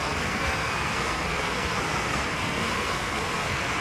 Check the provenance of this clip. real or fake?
fake